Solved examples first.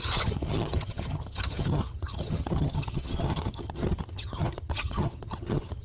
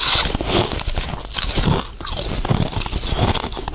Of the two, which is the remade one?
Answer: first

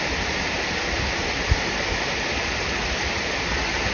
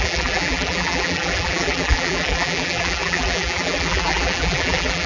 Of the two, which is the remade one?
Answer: second